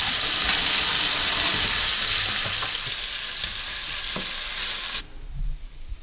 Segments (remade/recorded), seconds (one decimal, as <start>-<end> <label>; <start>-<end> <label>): 0.0-6.0 recorded